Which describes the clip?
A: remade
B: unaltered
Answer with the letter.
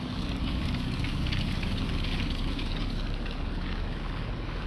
A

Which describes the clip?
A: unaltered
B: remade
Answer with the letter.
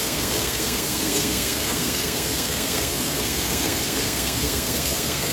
B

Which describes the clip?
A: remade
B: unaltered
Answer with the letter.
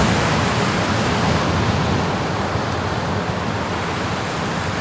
B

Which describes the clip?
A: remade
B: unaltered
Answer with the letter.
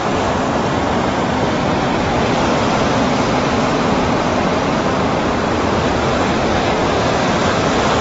B